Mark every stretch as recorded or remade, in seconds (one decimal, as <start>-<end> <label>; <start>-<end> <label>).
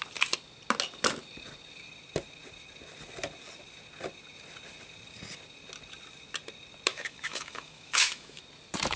0.0-6.9 recorded; 6.9-8.4 remade; 8.4-9.0 recorded